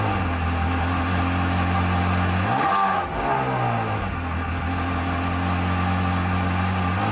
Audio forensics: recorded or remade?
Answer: recorded